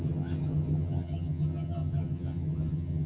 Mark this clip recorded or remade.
remade